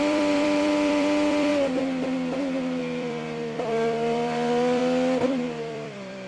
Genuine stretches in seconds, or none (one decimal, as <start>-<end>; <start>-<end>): 1.5-2.8; 4.8-5.3